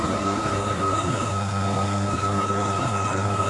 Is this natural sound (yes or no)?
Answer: no